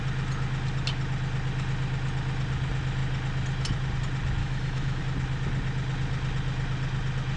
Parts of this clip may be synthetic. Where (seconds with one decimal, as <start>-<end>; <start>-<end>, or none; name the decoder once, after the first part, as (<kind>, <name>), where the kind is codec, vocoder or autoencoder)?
4.4-5.0 (autoencoder, DAC-VAE)